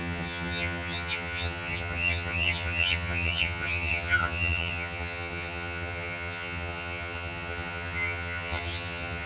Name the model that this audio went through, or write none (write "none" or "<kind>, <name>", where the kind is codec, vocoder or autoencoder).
vocoder, HiFi-GAN